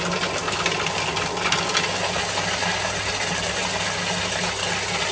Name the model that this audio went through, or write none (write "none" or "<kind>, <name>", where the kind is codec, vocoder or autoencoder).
none